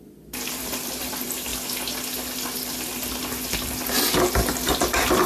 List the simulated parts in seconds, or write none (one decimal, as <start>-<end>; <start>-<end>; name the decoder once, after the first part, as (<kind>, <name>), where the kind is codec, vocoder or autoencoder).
0.0-1.5 (vocoder, BigVGAN v2); 4.7-5.3